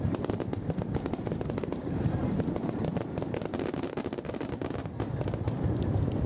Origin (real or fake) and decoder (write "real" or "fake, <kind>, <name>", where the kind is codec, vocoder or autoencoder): real